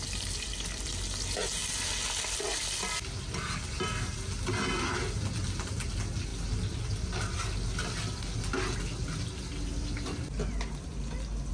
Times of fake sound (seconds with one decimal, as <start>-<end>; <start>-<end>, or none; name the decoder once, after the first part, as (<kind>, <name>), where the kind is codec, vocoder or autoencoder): none